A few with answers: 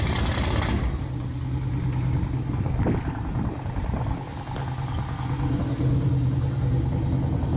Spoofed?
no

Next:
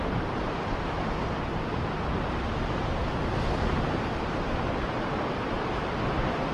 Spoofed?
no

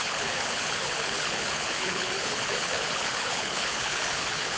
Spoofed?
yes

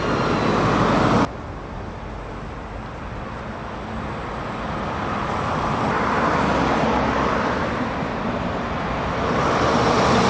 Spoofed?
no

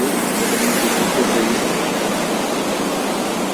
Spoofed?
no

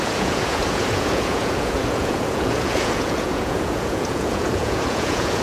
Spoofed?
yes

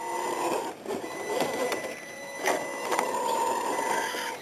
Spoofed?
yes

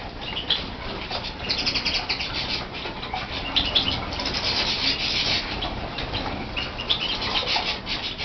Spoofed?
no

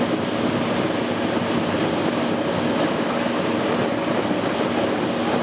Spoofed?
no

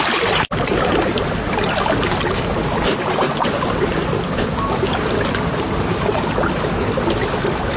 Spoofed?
no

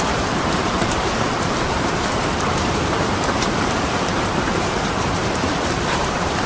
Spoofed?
yes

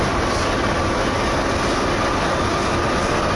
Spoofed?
no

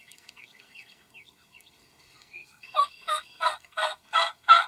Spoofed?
yes